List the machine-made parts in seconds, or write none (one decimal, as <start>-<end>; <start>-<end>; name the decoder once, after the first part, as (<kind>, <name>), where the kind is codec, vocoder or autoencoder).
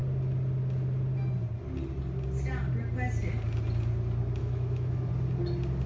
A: 4.4-5.1 (autoencoder, DAC-VAE)